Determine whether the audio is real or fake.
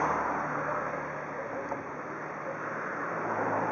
real